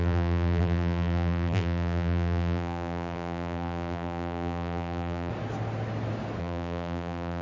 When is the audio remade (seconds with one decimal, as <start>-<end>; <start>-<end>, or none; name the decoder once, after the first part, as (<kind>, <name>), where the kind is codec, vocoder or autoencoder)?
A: 0.0-5.3 (vocoder, BigVGAN v2); 6.4-7.4